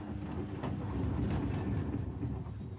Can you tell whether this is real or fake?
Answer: real